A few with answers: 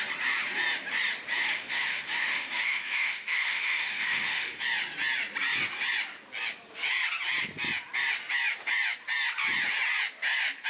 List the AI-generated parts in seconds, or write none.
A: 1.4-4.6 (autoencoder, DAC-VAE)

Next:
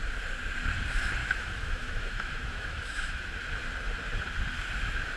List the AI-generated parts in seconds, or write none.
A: 1.2-3.2 (autoencoder, DAC-VAE)

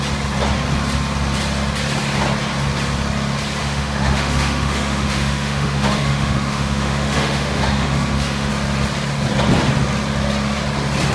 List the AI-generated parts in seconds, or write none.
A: 3.6-8.5 (autoencoder, DAC-VAE)

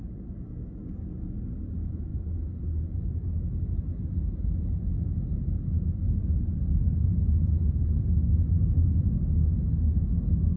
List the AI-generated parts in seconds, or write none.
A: none

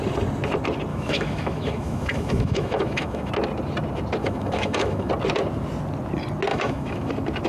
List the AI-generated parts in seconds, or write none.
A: 0.9-3.3 (autoencoder, DAC-VAE); 4.2-5.1; 6.5-7.1

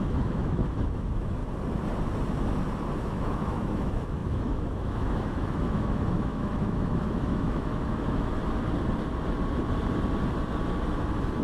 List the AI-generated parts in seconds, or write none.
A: 0.0-1.4 (autoencoder, DAC-VAE); 3.0-8.3

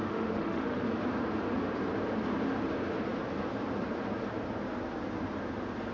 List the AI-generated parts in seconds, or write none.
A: 0.0-0.8 (autoencoder, DAC-VAE)

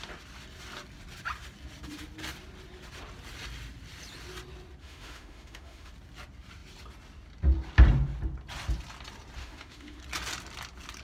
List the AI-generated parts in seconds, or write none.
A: 4.8-5.9 (autoencoder, DAC-VAE); 9.4-10.0